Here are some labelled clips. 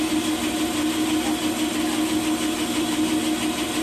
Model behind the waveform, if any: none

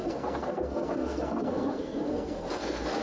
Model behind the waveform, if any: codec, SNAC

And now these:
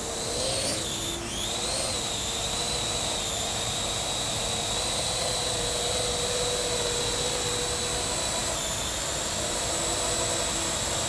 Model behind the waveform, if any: none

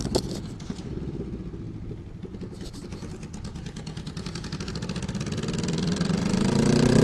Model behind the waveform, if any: none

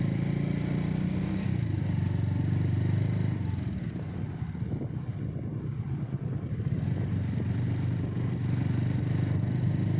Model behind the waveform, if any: none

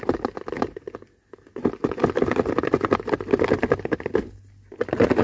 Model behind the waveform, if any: none